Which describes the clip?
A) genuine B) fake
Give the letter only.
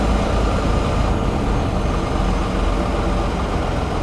A